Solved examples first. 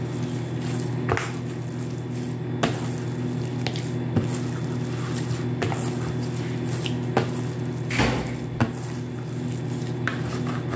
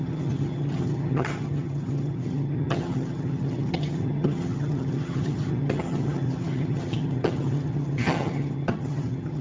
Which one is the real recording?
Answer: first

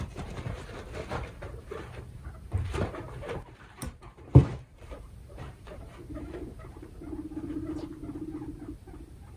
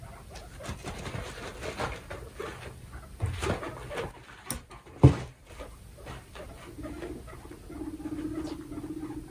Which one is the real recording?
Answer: second